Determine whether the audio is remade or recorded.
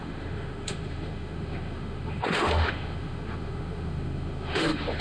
remade